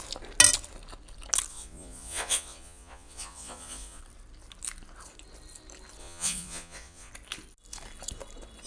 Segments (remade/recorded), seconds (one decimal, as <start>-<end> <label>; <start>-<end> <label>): 0.0-1.5 recorded; 1.5-4.0 remade; 4.0-6.0 recorded; 6.0-7.1 remade; 7.1-8.7 recorded